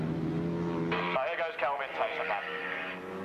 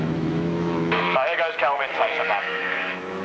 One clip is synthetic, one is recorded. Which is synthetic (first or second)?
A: second